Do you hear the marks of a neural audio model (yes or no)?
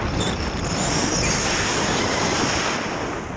no